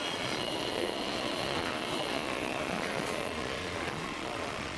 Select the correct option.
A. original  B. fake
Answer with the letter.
B